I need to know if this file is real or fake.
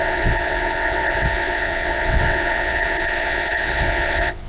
fake